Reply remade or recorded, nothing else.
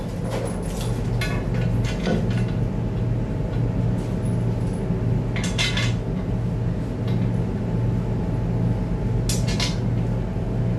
recorded